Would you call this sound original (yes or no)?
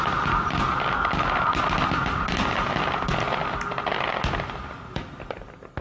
yes